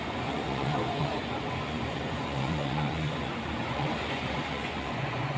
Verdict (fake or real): fake